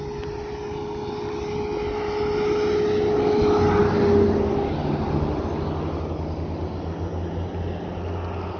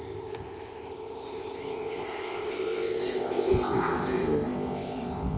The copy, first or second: second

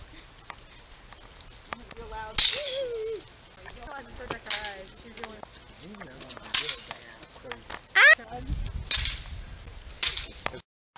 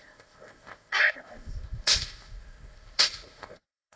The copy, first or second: second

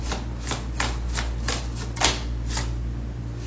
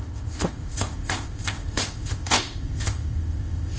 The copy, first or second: second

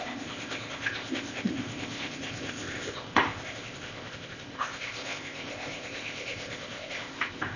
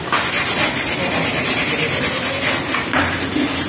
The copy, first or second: first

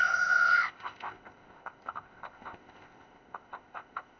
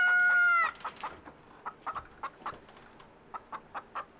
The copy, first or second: first